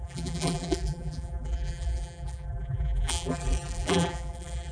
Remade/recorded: remade